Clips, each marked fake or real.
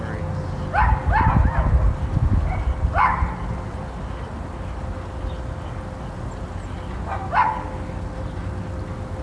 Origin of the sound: real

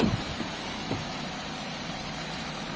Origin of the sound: fake